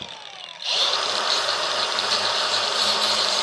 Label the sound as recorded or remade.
remade